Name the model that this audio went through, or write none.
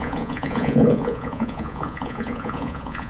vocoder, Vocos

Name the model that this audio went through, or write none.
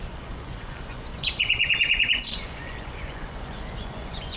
vocoder, Vocos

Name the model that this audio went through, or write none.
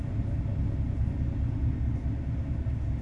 none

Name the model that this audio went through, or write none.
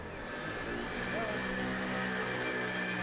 none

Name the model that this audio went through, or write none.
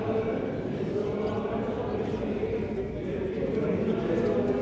none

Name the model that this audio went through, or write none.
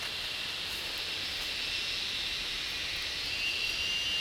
none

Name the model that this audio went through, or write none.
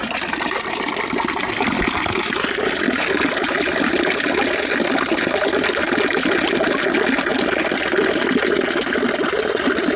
none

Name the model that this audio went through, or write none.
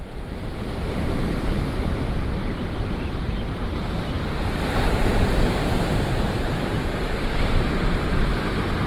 vocoder, BigVGAN v2